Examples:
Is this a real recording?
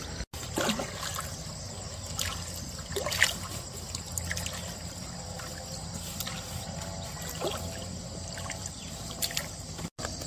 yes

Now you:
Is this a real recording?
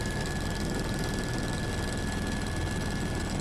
yes